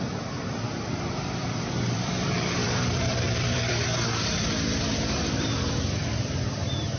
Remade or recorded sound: remade